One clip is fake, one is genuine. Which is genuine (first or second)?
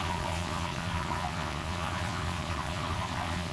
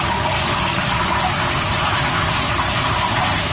second